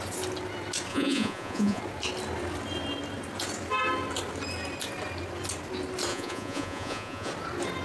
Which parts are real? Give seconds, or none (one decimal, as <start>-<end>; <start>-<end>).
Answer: 0.0-0.9; 1.8-6.1; 7.3-7.8